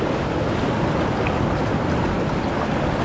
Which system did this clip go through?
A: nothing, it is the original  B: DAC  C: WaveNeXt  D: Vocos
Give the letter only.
A